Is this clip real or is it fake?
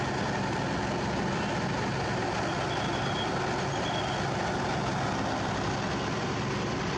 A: real